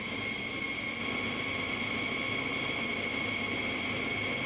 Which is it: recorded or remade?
recorded